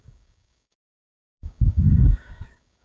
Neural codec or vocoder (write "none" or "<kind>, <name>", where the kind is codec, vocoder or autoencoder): codec, DAC